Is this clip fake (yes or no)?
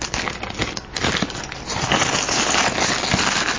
no